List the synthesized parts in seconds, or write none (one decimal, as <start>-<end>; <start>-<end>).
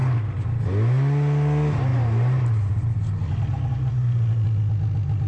none